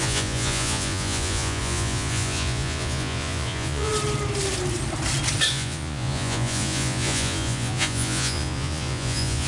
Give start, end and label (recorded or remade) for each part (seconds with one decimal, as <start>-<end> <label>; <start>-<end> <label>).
0.0-3.9 remade; 3.9-5.5 recorded; 5.5-9.5 remade